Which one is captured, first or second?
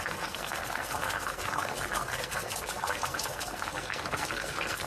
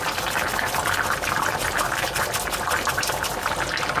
second